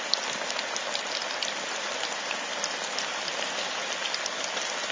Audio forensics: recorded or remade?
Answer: recorded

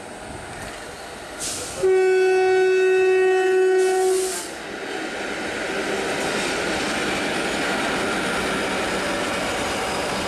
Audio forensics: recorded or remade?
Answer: recorded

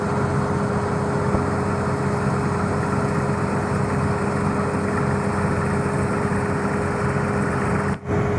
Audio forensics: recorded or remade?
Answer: recorded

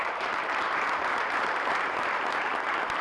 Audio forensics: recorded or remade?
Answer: remade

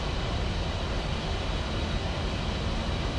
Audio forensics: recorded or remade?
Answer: recorded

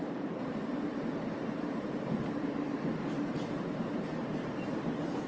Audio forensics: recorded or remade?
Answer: remade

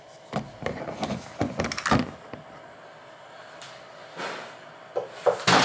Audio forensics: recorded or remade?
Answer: recorded